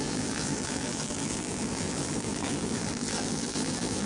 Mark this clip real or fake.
fake